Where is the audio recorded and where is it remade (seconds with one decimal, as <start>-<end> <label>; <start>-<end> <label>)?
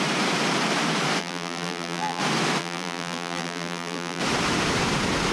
0.0-1.2 recorded; 1.2-2.2 remade; 2.2-2.6 recorded; 2.6-4.2 remade; 4.2-5.3 recorded